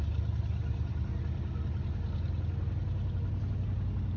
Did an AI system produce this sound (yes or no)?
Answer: no